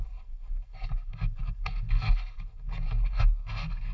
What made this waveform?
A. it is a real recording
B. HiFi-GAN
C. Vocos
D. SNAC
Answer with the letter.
D